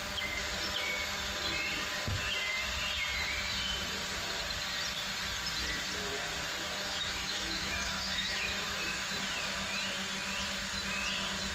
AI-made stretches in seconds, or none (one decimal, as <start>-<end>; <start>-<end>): 6.5-9.1